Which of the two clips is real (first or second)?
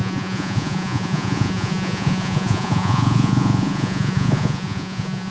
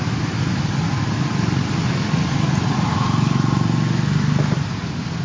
second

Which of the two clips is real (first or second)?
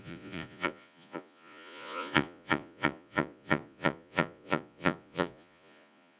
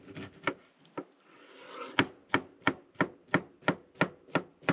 second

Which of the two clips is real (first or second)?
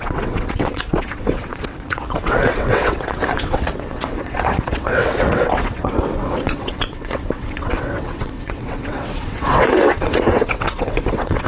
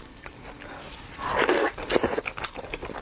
second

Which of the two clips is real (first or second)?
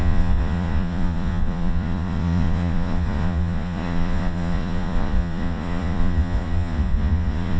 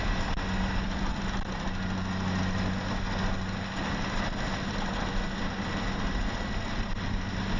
second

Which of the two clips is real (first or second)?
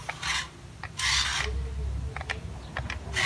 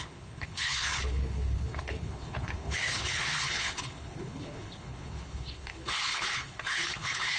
first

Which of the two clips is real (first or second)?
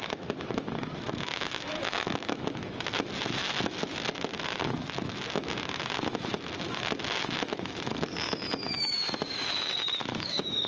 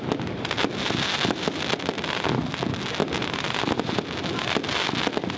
second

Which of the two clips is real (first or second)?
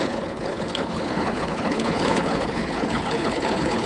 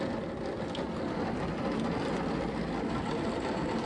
second